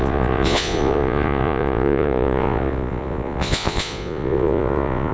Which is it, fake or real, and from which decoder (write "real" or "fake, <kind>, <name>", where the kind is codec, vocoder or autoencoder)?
fake, vocoder, Vocos